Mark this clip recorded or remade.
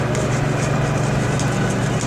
recorded